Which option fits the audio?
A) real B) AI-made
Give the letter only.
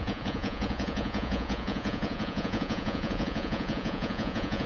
B